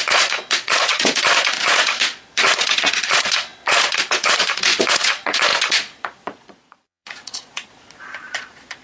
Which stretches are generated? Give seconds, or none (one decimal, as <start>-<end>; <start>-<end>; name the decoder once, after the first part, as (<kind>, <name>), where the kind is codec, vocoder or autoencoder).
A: 0.0-8.8 (vocoder, Vocos)